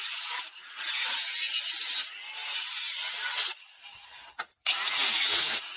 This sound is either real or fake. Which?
real